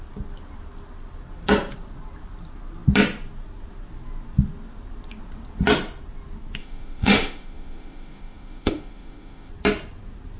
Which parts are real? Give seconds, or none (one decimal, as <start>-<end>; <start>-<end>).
0.0-6.6; 9.5-10.4